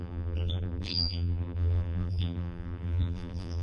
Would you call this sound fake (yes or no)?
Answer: yes